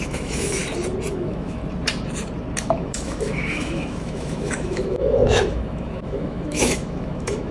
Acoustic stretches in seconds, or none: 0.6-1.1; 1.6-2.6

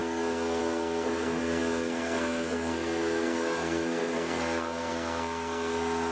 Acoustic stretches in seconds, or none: none

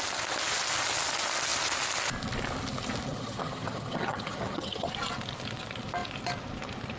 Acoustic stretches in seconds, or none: 0.0-3.1; 4.9-7.0

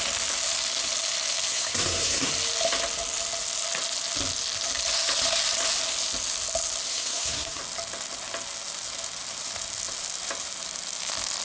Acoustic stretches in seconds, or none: 0.0-1.5; 2.3-6.9; 7.6-11.4

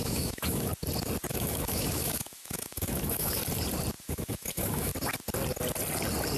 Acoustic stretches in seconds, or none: 0.7-1.3; 3.4-4.0; 4.9-6.4